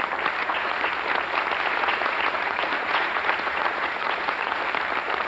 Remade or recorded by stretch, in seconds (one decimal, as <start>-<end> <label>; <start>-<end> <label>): 0.0-0.4 recorded; 0.4-0.9 remade; 0.9-1.7 recorded; 1.7-4.6 remade; 4.6-5.3 recorded